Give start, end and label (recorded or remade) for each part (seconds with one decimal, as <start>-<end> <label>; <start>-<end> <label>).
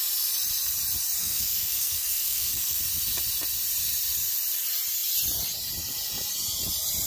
0.0-1.2 recorded; 1.2-2.8 remade; 2.8-7.1 recorded